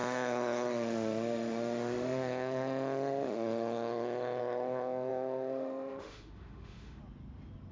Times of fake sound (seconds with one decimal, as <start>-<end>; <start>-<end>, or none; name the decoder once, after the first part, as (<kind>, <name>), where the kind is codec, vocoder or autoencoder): 0.0-7.0 (autoencoder, DAC-VAE)